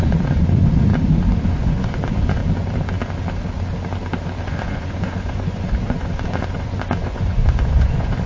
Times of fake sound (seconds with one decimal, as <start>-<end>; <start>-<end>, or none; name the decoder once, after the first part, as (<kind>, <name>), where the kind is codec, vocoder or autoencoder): 0.0-0.9 (vocoder, Vocos); 1.5-2.4; 4.4-8.3